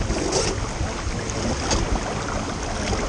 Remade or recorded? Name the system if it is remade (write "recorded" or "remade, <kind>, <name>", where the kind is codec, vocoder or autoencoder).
recorded